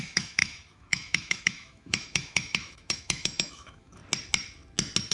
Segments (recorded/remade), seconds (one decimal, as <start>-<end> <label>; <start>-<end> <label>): 0.0-4.0 remade; 4.0-5.1 recorded